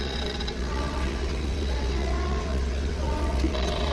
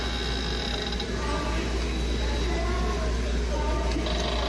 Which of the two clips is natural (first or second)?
second